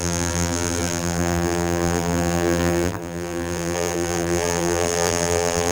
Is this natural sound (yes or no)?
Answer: no